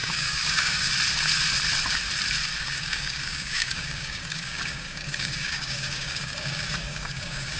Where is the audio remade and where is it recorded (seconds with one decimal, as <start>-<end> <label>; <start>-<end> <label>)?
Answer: 0.0-0.9 remade; 0.9-2.6 recorded; 2.6-7.6 remade